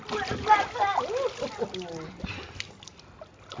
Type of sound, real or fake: real